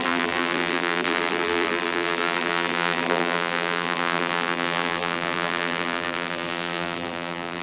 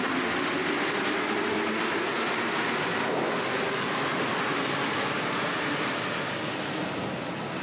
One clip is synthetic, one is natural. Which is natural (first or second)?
second